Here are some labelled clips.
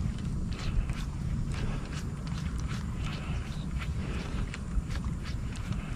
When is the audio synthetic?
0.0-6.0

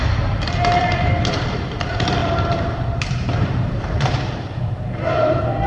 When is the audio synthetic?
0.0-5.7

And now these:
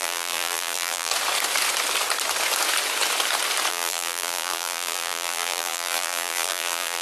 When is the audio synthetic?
0.0-1.1; 3.7-7.0

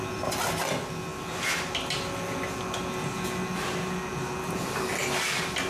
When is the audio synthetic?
none